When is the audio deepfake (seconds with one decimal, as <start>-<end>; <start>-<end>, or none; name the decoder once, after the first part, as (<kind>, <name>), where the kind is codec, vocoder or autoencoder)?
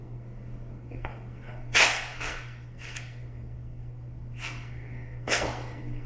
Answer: 0.0-6.1 (codec, SNAC)